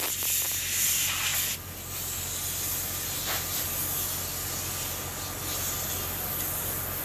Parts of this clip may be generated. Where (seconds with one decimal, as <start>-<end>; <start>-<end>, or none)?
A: none